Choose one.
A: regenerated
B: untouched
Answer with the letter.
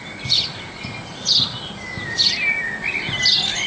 B